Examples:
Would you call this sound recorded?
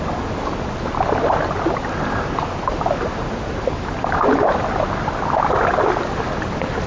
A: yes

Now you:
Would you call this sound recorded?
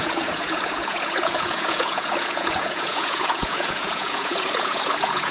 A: no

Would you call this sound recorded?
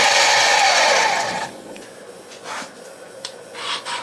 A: no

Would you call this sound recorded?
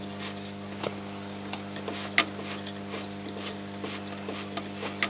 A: yes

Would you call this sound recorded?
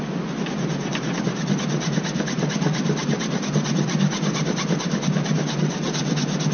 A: yes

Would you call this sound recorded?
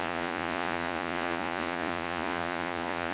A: no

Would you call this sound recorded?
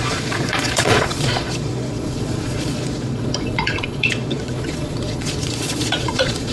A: no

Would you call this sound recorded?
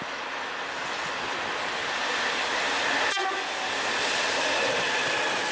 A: yes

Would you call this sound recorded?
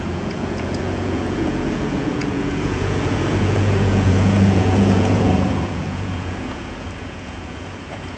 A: no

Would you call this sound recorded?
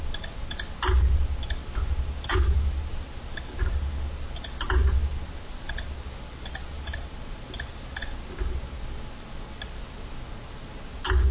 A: yes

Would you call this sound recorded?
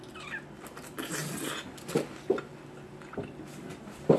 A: yes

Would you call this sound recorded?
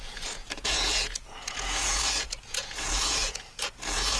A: no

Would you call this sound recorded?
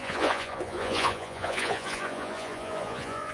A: no